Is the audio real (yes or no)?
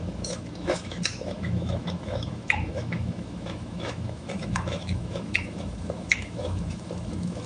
no